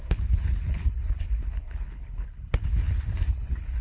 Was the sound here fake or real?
fake